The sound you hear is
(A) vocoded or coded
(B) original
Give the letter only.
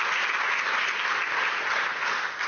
B